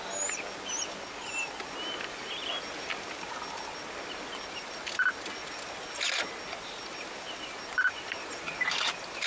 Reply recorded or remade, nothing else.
recorded